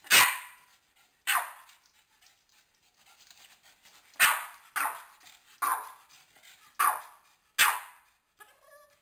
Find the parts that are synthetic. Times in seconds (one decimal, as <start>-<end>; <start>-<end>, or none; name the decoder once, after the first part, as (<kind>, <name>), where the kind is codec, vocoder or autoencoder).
none